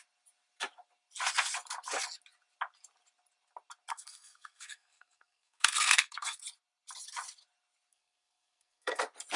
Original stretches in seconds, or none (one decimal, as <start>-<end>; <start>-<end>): 0.0-3.9; 6.4-7.9; 9.0-9.4